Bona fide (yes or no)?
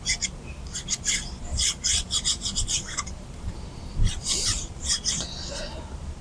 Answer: no